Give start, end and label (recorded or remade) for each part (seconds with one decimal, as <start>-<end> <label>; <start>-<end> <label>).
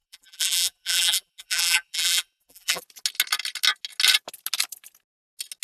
0.0-2.8 remade; 2.8-5.6 recorded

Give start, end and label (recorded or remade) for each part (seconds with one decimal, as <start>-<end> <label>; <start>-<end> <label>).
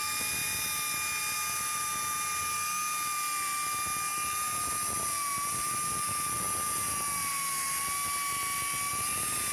0.0-9.5 recorded